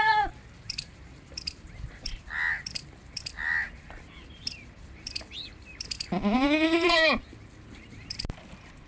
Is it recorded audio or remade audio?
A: remade